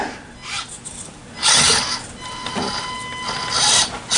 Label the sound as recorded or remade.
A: recorded